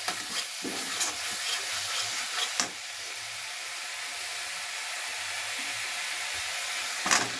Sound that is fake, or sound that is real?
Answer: real